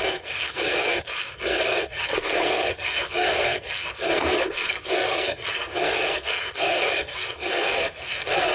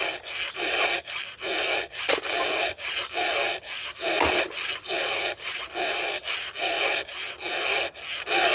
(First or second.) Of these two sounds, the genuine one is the second